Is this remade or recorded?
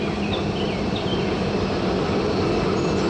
recorded